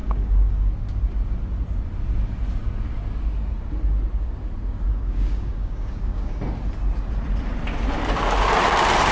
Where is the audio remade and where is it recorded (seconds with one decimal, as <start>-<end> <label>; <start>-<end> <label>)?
0.0-0.7 remade; 0.7-4.9 recorded; 4.9-6.4 remade; 6.4-9.1 recorded